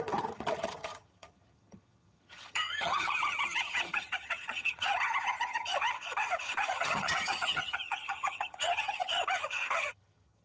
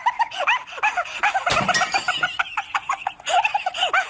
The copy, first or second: first